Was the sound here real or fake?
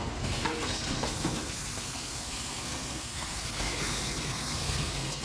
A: fake